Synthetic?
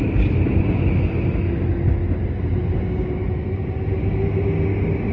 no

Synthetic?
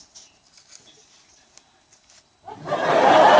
no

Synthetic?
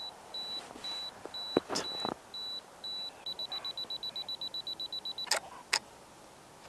no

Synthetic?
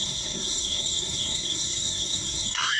yes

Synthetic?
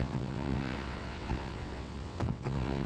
yes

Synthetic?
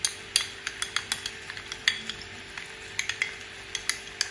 no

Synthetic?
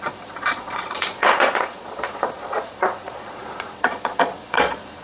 yes